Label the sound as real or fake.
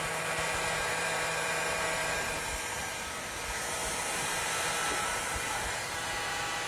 fake